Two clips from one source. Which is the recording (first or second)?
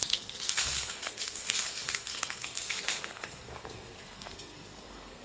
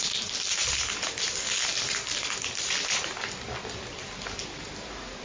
second